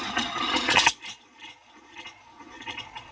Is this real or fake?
fake